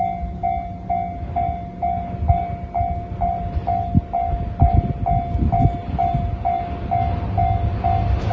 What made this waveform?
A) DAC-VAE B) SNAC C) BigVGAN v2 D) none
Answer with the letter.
D